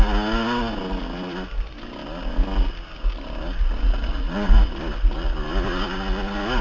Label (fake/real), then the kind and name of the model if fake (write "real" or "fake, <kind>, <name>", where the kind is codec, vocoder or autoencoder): real